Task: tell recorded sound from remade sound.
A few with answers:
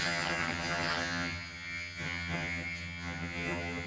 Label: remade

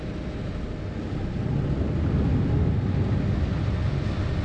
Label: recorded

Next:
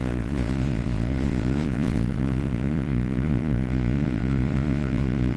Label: remade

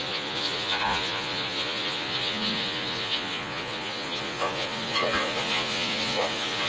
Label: remade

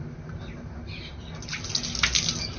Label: recorded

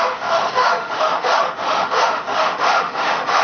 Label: remade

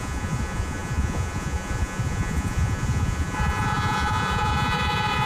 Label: remade